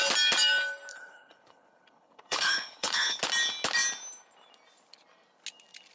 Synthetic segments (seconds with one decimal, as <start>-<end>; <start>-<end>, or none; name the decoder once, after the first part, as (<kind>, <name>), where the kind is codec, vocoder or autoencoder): 0.9-3.2 (codec, HILCodec)